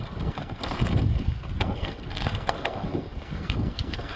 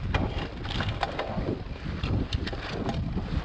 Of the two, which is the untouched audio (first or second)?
second